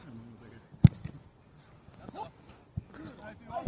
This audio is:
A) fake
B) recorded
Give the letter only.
B